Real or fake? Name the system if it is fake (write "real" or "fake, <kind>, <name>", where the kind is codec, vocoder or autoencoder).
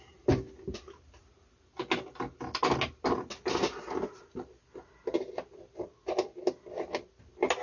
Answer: real